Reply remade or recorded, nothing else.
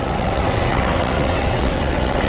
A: remade